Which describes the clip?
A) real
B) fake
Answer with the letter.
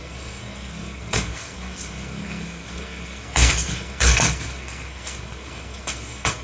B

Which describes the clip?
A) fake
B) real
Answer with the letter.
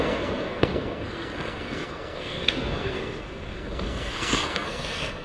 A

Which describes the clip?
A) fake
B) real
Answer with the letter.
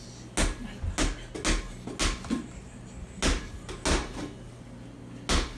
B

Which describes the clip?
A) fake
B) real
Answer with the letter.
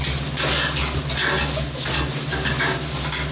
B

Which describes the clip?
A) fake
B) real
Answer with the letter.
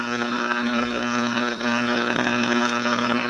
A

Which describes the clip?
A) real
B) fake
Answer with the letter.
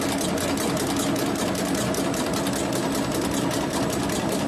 A